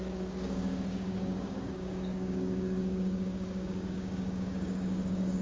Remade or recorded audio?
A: remade